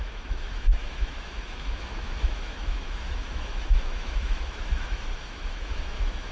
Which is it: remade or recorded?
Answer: remade